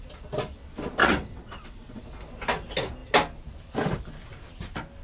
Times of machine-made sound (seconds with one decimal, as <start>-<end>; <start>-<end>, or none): 1.0-2.0